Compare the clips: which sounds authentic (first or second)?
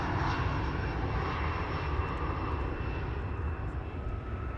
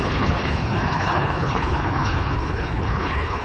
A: first